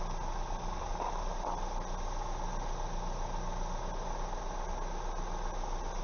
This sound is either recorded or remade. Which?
recorded